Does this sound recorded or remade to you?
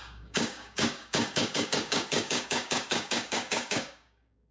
remade